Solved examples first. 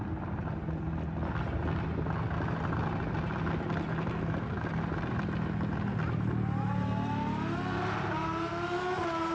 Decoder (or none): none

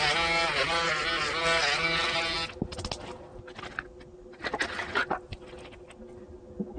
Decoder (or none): none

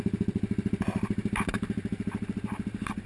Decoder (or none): vocoder, BigVGAN v2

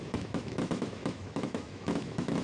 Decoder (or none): autoencoder, DAC-VAE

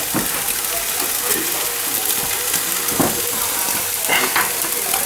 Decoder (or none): none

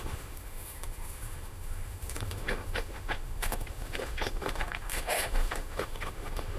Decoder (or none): autoencoder, DAC-VAE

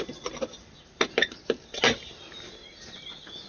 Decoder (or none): none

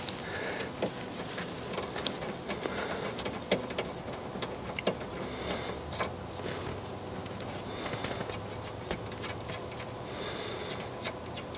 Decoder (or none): none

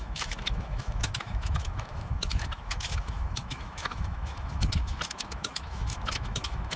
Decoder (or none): autoencoder, DAC-VAE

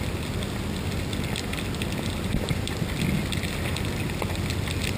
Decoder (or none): none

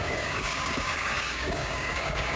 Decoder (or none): codec, DAC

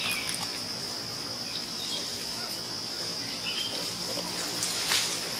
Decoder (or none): none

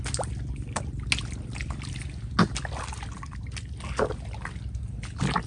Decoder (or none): none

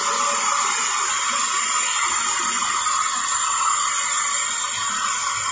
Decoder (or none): none